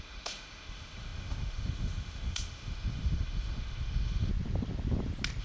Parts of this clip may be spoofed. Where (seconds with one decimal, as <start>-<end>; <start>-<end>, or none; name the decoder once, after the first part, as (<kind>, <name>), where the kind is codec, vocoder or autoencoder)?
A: 0.0-4.3 (autoencoder, DAC-VAE)

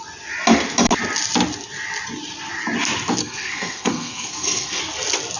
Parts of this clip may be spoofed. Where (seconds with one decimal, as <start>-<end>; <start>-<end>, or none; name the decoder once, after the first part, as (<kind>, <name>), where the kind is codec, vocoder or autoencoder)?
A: 3.2-4.8 (codec, SNAC)